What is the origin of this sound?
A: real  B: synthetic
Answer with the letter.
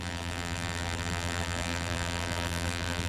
B